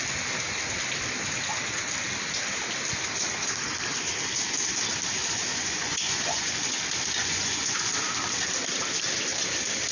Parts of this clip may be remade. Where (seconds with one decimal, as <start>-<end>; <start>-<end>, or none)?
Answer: 5.5-6.8; 7.2-7.9